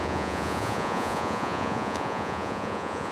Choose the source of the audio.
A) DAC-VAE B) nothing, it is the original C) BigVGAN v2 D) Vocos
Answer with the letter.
D